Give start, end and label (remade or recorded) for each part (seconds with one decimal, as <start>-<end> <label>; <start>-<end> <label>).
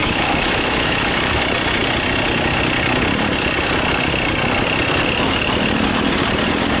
0.0-1.4 remade; 1.4-6.8 recorded